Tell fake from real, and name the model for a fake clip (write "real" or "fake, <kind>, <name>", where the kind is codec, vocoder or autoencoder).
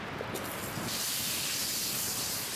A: real